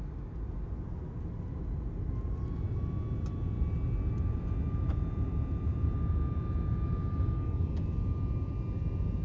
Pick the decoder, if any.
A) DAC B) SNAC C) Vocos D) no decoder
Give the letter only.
D